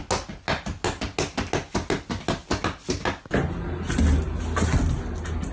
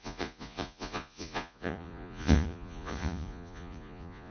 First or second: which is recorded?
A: first